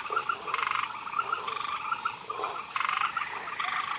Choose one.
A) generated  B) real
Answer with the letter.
B